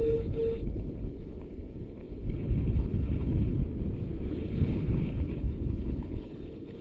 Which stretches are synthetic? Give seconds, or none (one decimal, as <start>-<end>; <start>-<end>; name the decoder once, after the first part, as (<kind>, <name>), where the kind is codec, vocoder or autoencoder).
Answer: 0.0-3.6 (codec, HILCodec); 4.3-6.8